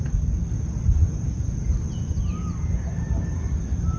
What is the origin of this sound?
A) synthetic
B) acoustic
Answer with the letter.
B